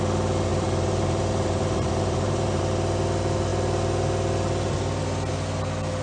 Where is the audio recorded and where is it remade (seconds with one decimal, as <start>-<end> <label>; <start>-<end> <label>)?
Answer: 0.0-0.5 recorded; 0.5-2.6 remade; 2.6-6.0 recorded